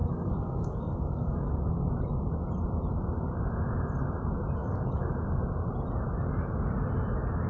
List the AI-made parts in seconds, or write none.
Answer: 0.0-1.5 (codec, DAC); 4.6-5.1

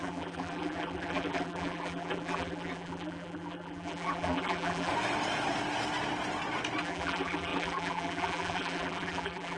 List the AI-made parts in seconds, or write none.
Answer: 0.0-4.9 (vocoder, BigVGAN v2); 6.8-9.6

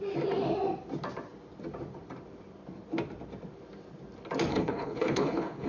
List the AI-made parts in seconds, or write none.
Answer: 4.5-5.7 (codec, HILCodec)

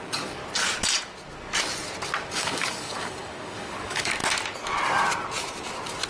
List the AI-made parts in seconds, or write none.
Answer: 0.0-0.4 (codec, DAC); 2.3-4.2

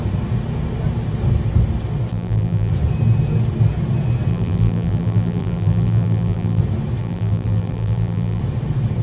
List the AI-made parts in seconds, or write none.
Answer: 2.1-2.7 (vocoder, BigVGAN v2); 4.3-6.6; 7.0-8.4

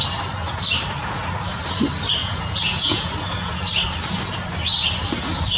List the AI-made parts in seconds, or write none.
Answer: 2.2-3.1 (vocoder, Vocos)